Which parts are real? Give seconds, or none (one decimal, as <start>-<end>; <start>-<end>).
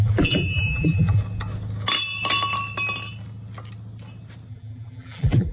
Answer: 1.2-4.5